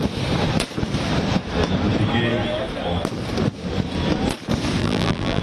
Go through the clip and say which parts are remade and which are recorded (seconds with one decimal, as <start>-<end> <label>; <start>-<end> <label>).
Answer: 0.0-4.8 recorded; 4.8-5.4 remade